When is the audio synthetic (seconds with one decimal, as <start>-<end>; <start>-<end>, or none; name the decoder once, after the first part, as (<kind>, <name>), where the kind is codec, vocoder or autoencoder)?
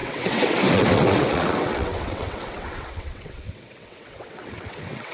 0.0-5.1 (vocoder, WaveNeXt)